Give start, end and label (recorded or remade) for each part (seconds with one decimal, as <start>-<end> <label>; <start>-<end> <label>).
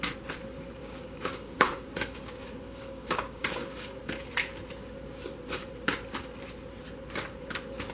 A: 0.0-0.8 recorded; 0.8-4.0 remade; 4.0-7.9 recorded